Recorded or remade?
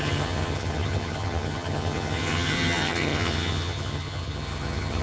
remade